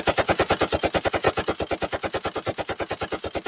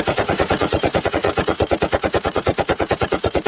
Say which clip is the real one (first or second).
first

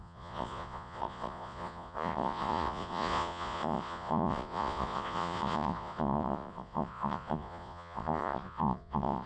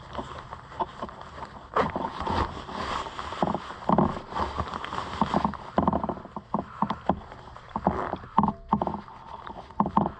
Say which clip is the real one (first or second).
second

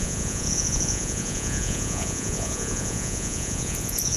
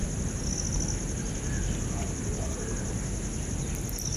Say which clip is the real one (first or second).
second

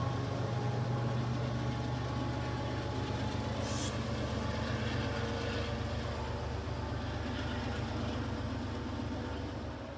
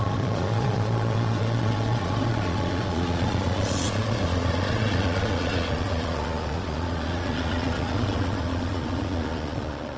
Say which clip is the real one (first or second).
first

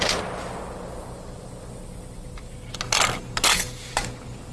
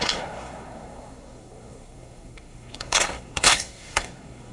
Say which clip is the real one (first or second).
first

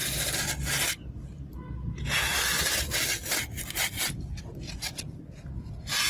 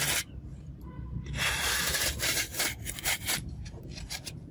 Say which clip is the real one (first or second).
first